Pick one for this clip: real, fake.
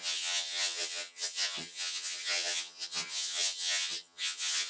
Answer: fake